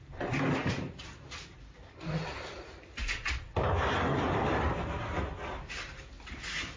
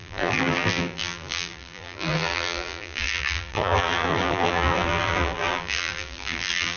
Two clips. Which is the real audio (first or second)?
first